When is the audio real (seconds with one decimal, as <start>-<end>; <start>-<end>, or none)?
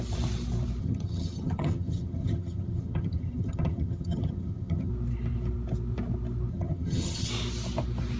0.0-0.8; 4.9-6.5; 7.3-8.2